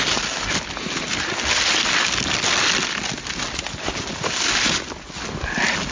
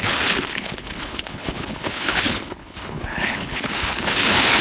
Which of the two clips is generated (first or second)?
second